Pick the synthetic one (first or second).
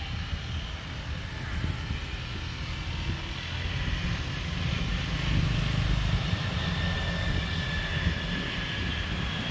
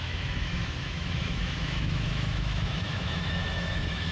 second